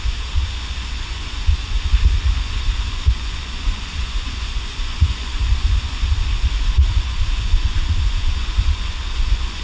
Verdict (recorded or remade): remade